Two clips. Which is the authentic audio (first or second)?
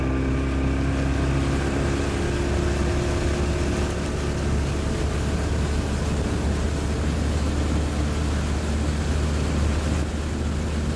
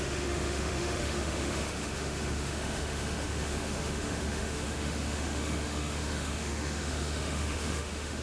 first